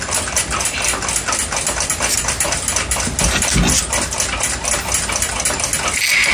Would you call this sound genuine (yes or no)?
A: yes